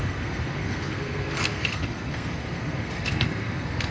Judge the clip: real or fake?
fake